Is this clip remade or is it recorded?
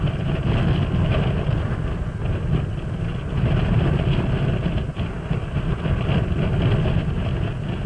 recorded